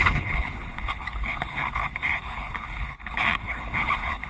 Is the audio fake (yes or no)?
yes